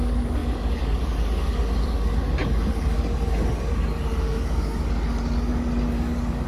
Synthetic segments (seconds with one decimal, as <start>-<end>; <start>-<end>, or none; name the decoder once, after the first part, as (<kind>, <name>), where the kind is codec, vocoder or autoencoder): 0.0-6.5 (codec, DAC)